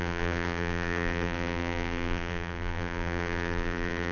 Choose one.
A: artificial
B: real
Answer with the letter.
A